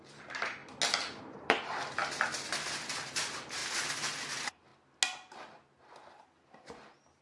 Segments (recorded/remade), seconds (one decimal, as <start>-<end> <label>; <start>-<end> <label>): 0.0-0.6 remade; 0.6-1.2 recorded; 1.2-2.0 remade; 2.0-2.7 recorded; 2.7-3.6 remade; 3.6-4.3 recorded; 4.3-4.7 remade; 4.7-7.2 recorded